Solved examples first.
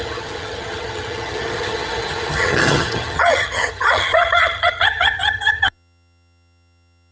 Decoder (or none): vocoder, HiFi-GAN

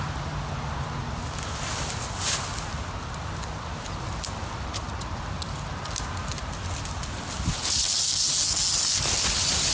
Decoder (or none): none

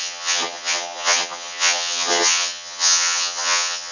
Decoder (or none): vocoder, HiFi-GAN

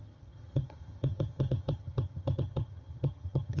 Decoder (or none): vocoder, HiFi-GAN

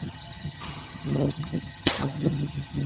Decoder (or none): vocoder, HiFi-GAN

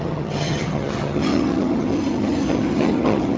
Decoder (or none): vocoder, HiFi-GAN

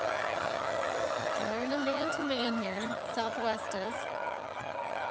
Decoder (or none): vocoder, HiFi-GAN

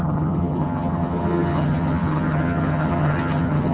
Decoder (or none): vocoder, HiFi-GAN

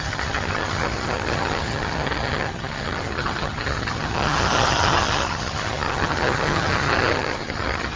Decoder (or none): vocoder, HiFi-GAN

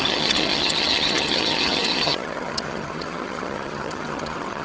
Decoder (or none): vocoder, HiFi-GAN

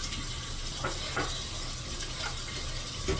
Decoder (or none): none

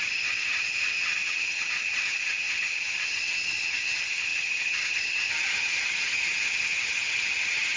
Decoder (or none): vocoder, HiFi-GAN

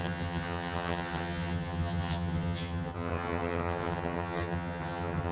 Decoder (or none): vocoder, HiFi-GAN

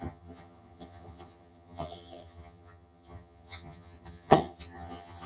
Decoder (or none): vocoder, HiFi-GAN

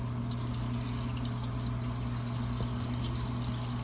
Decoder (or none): none